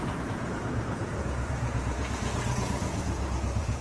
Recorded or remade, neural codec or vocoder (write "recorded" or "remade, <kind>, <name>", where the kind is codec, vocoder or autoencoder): remade, vocoder, Vocos